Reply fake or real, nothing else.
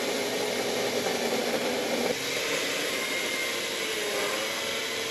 real